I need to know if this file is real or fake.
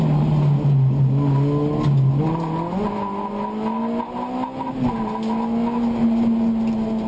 real